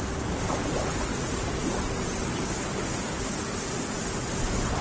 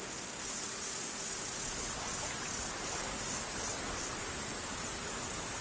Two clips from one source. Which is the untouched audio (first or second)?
second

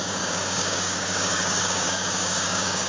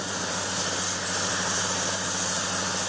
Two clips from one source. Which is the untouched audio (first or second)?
second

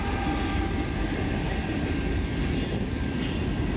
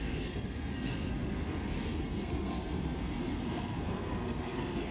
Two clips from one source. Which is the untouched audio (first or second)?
first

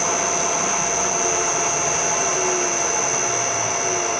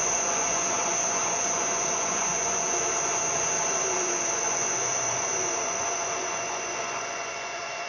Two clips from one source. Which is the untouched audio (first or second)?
first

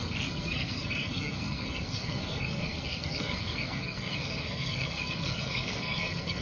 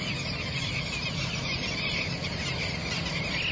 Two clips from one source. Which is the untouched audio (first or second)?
second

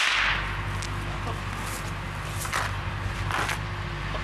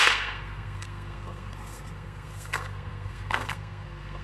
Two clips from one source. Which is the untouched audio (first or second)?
first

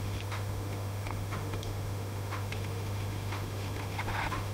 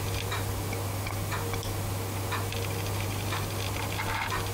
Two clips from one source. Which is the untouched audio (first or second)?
second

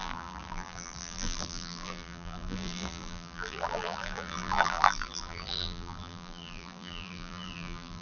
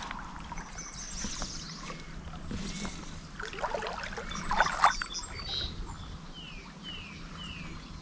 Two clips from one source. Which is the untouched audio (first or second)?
second